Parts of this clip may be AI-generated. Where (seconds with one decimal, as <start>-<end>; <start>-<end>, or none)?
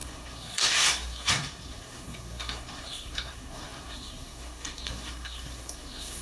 0.0-6.2